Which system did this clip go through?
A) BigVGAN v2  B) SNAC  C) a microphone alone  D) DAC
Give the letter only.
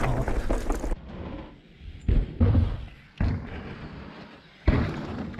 C